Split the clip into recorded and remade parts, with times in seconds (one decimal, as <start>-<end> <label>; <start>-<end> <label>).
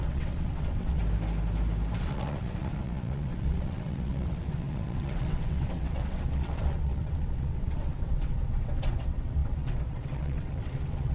0.0-1.0 remade; 1.0-2.0 recorded; 2.0-11.1 remade